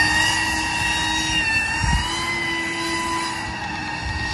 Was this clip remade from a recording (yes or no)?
no